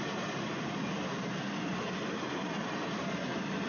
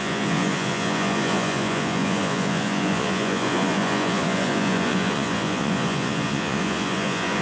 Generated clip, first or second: second